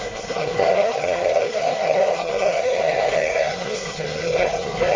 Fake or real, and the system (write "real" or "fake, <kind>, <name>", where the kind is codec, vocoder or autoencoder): fake, codec, SNAC